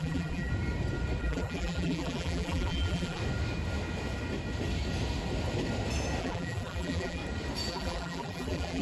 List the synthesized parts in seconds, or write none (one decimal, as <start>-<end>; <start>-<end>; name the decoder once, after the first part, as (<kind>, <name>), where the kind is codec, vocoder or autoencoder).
0.0-0.5 (vocoder, BigVGAN v2); 1.2-3.2; 6.2-7.2; 7.7-8.8